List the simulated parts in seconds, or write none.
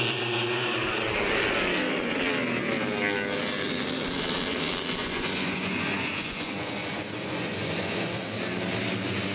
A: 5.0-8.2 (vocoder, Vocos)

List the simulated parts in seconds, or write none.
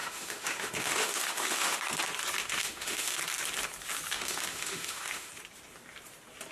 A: 0.0-1.8 (autoencoder, DAC-VAE); 2.4-3.2; 4.1-5.3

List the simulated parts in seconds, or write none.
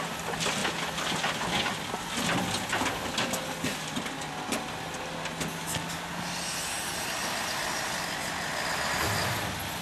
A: none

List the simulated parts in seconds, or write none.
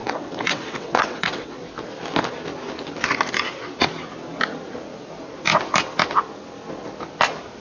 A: 0.0-1.6 (vocoder, WaveNeXt)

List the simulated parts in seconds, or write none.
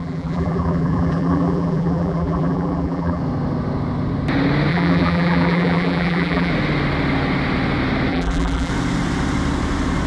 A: 0.0-3.2 (vocoder, BigVGAN v2); 4.7-6.5; 8.1-8.7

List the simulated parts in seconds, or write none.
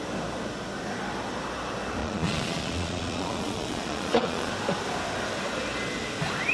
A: 2.0-4.5 (vocoder, Vocos)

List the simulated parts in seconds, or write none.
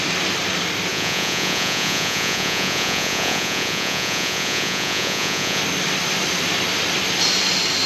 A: 0.9-5.6 (vocoder, Vocos)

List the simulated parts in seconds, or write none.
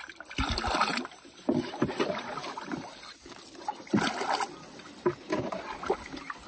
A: none